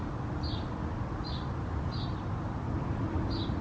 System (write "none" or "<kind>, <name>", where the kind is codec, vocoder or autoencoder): none